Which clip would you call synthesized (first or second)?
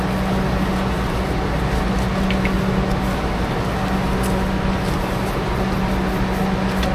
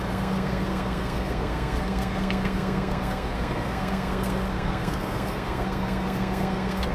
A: second